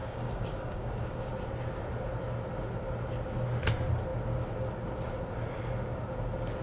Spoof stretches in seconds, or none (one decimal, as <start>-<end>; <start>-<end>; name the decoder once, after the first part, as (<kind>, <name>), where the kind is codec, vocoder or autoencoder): 0.0-1.3 (codec, DAC)